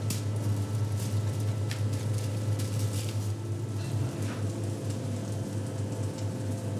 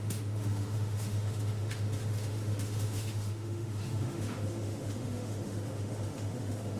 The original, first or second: first